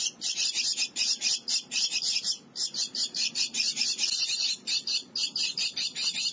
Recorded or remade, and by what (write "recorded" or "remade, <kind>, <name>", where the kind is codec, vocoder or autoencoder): recorded